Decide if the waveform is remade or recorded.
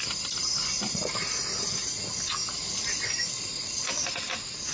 recorded